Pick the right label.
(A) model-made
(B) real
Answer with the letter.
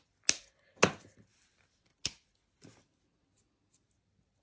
B